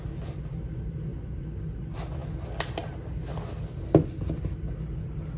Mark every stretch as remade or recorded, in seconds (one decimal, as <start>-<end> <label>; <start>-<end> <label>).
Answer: 0.0-5.4 recorded